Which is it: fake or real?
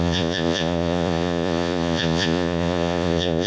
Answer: fake